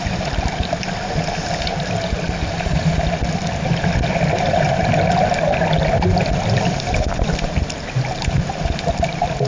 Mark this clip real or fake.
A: real